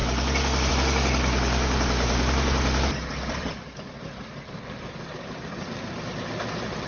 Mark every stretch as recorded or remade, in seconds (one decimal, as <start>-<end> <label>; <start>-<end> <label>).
0.0-6.9 recorded